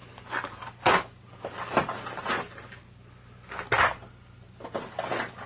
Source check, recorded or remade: recorded